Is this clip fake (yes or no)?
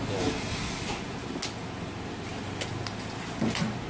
no